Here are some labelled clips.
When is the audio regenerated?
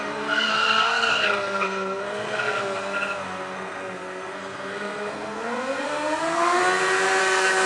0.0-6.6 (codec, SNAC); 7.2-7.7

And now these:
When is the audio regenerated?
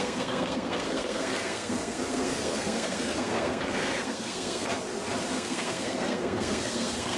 0.0-4.7 (codec, SNAC); 5.3-7.2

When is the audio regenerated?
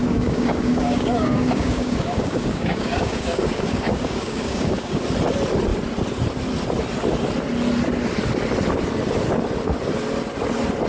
0.0-5.0 (codec, DAC)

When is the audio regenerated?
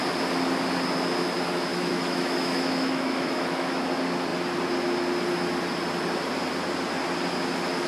1.7-3.8 (autoencoder, DAC-VAE)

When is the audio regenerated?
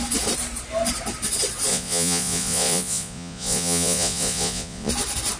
1.7-4.9 (vocoder, Vocos)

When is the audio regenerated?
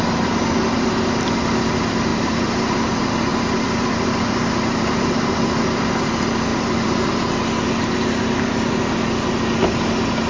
2.1-2.8 (vocoder, BigVGAN v2); 3.3-5.3; 6.5-7.0